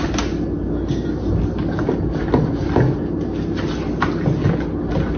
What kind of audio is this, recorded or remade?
recorded